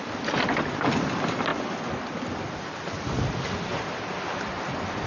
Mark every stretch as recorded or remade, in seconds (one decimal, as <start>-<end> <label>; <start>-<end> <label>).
0.0-5.1 recorded